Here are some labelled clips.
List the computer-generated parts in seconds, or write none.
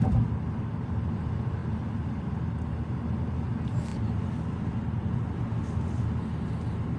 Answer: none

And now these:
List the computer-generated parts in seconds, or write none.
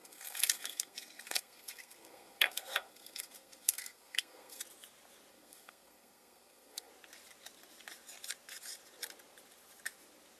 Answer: 0.0-4.6 (codec, SNAC); 5.3-6.9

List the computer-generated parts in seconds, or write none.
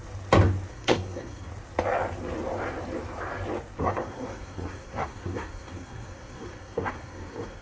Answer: 0.7-1.5 (codec, SNAC); 3.8-7.6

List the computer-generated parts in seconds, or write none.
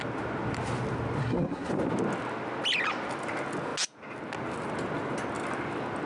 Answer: 1.2-1.7 (codec, SNAC)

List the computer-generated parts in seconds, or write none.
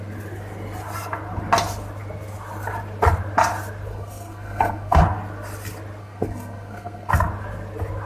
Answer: 3.9-5.0 (codec, SNAC); 6.0-7.1